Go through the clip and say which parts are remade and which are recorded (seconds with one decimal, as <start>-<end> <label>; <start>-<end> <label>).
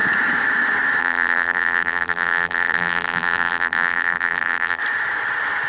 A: 0.0-1.0 recorded; 1.0-4.8 remade; 4.8-5.7 recorded